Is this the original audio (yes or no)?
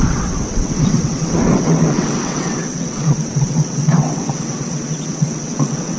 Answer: no